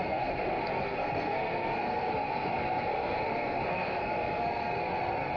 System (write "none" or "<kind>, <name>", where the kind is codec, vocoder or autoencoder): codec, SNAC